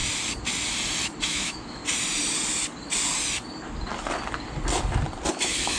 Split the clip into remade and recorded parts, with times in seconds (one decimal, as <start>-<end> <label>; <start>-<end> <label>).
0.0-1.2 recorded; 1.2-1.8 remade; 1.8-5.3 recorded; 5.3-5.8 remade